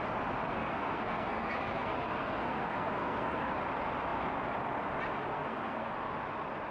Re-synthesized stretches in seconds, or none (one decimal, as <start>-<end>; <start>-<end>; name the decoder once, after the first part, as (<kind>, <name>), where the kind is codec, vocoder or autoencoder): 0.5-3.6 (codec, SNAC); 5.3-5.9